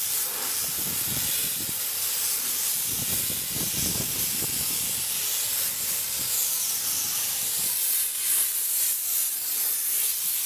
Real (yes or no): yes